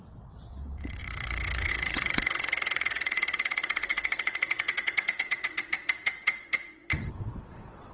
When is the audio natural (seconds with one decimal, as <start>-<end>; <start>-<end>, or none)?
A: none